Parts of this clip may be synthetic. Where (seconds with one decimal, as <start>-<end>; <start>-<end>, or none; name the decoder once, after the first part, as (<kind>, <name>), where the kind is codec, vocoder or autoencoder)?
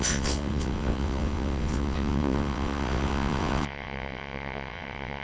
0.0-5.2 (vocoder, WaveNeXt)